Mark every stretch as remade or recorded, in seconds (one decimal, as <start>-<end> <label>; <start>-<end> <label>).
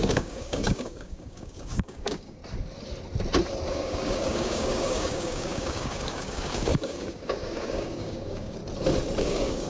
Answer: 0.0-2.4 remade; 2.4-3.7 recorded; 3.7-8.6 remade; 8.6-9.2 recorded; 9.2-9.7 remade